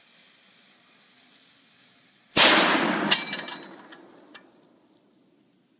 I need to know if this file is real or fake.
real